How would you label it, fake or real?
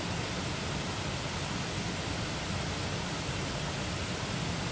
real